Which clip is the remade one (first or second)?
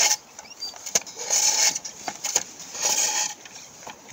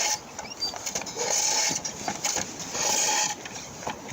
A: first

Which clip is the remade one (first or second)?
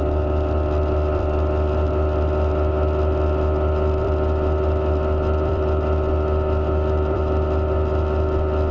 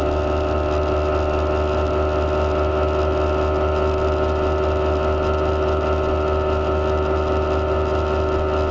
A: first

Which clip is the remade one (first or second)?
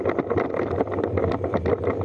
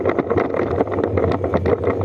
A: first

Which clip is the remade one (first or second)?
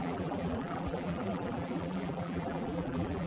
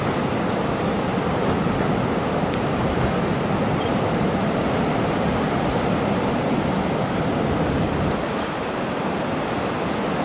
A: first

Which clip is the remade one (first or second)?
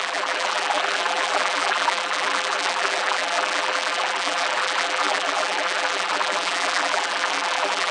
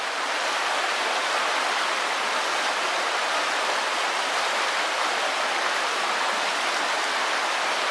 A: first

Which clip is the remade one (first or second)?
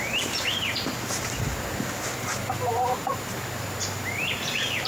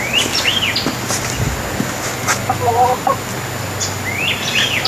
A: first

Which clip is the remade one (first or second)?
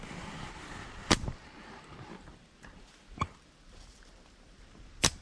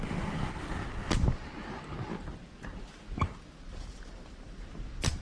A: first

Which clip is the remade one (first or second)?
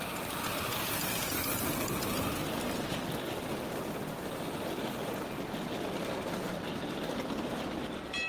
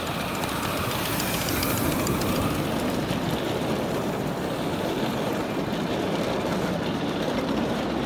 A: second